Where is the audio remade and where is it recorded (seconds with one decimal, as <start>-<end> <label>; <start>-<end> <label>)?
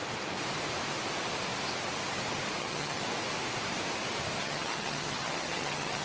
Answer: 0.0-2.6 recorded; 2.6-3.0 remade; 3.0-4.4 recorded; 4.4-6.0 remade